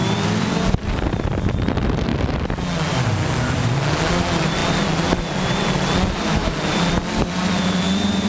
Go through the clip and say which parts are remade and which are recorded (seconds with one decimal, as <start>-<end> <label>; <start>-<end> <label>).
0.0-2.1 remade; 2.1-2.9 recorded; 2.9-8.3 remade